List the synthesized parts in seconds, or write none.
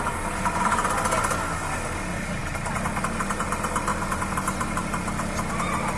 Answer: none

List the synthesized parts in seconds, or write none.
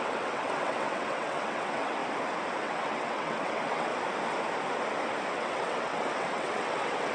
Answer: 0.0-2.0 (vocoder, WaveNeXt); 2.6-3.9; 5.3-7.1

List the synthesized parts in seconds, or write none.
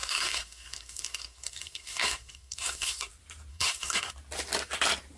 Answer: 0.0-3.1 (codec, SNAC); 3.5-4.1